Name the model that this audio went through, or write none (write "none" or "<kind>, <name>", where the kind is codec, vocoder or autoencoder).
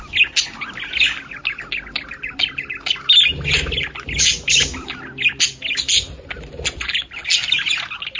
none